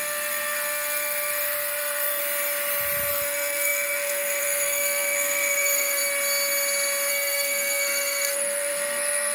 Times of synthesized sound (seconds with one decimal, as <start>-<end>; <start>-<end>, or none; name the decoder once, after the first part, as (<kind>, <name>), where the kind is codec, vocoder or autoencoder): 0.0-2.2 (codec, SNAC); 3.1-6.0; 7.1-9.3